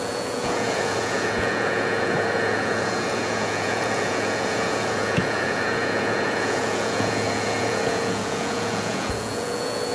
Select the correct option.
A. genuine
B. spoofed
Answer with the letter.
B